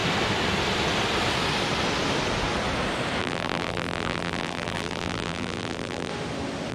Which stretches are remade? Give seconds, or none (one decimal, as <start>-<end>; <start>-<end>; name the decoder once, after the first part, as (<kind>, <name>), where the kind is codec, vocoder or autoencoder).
3.2-6.1 (vocoder, BigVGAN v2)